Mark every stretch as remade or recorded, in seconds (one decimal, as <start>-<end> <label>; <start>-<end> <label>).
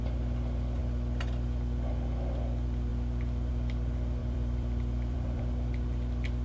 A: 0.0-4.2 recorded; 4.2-5.4 remade; 5.4-6.4 recorded